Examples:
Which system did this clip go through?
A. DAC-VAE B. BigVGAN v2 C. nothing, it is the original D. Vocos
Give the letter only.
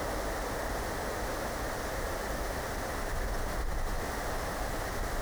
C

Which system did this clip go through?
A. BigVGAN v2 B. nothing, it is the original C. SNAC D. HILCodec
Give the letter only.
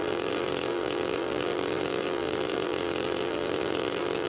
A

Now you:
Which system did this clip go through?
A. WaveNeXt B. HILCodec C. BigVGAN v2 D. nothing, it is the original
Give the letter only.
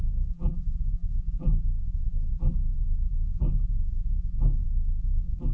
C